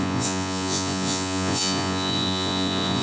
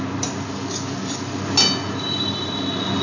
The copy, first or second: first